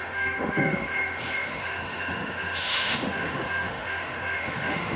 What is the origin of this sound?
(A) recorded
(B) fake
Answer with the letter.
B